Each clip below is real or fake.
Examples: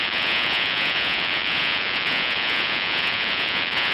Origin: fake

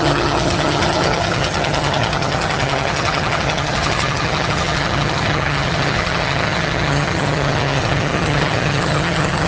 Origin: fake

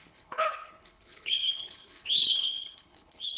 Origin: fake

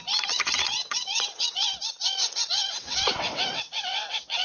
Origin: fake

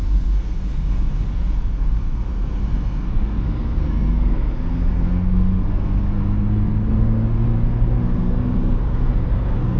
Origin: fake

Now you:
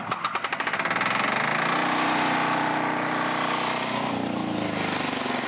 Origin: real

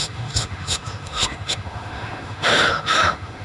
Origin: fake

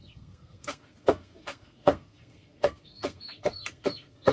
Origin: fake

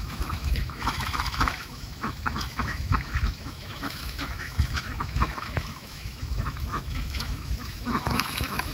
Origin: fake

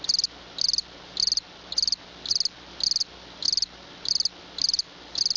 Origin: real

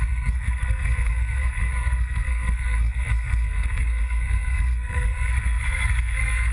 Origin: fake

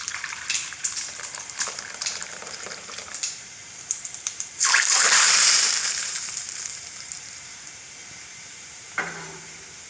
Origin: fake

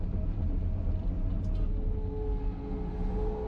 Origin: real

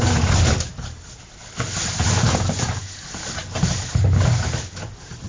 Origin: real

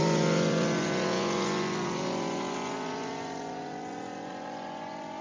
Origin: fake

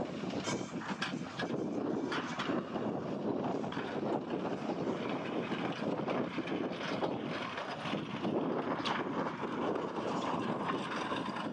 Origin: real